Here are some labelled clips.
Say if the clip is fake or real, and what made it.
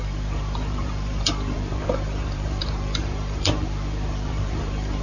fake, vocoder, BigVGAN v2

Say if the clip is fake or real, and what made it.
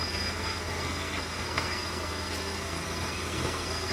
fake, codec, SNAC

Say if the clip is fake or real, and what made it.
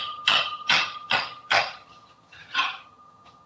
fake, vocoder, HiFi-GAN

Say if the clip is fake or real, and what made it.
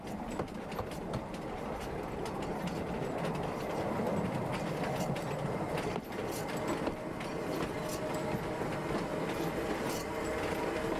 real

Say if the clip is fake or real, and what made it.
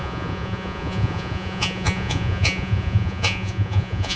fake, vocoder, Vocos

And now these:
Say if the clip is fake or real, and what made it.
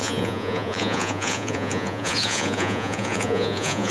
fake, vocoder, Vocos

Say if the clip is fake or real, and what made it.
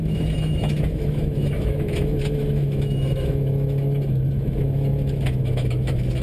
fake, autoencoder, DAC-VAE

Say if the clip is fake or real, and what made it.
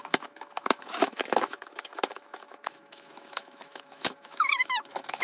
fake, autoencoder, DAC-VAE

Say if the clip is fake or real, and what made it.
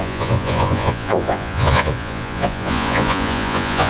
fake, vocoder, Vocos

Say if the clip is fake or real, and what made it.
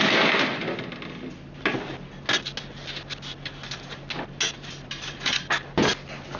real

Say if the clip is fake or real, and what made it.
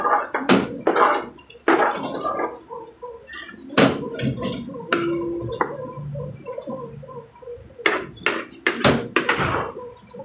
real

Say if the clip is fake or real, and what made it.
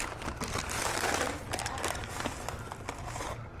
real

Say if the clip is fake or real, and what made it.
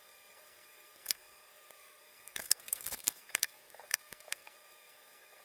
fake, codec, SNAC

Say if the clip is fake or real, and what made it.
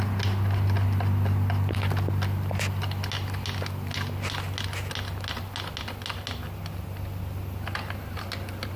real